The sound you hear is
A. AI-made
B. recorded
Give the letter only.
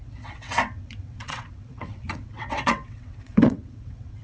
A